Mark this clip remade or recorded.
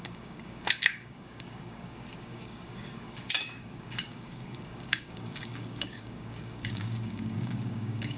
remade